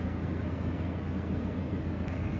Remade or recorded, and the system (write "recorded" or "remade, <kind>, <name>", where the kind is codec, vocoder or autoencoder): remade, codec, SNAC